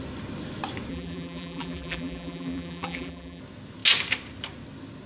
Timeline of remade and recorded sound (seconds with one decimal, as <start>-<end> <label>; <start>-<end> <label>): 0.0-0.9 recorded; 0.9-3.4 remade; 3.4-5.1 recorded